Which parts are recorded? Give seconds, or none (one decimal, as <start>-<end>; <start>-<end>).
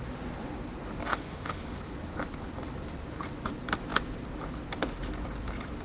0.0-1.1; 1.8-5.8